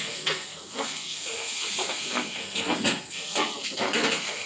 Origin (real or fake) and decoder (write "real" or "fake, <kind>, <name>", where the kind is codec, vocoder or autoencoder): fake, codec, SNAC